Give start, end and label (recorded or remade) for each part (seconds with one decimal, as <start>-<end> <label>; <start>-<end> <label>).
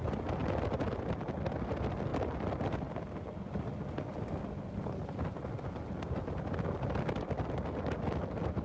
0.0-8.6 recorded